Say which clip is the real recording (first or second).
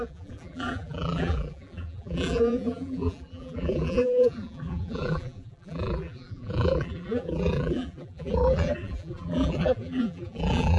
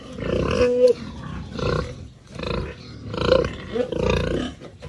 second